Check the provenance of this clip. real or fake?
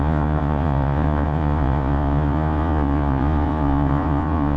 fake